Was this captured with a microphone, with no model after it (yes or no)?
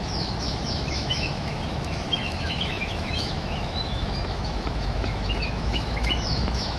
no